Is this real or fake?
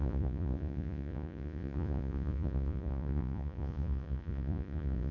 fake